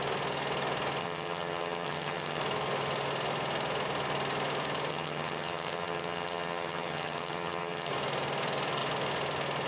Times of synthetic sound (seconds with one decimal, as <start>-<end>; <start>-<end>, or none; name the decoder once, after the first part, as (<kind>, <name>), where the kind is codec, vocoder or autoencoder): 1.0-2.4 (vocoder, HiFi-GAN); 4.9-7.9